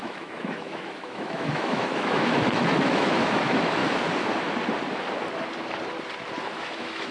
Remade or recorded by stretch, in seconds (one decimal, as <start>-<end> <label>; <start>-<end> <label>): 0.0-3.8 remade; 3.8-6.4 recorded; 6.4-7.1 remade